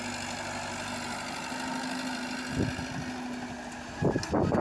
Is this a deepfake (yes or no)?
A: no